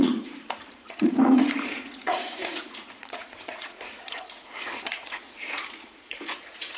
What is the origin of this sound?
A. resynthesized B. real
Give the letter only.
A